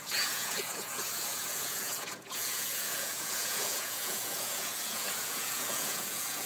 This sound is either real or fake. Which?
fake